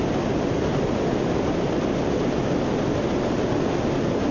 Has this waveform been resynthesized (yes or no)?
no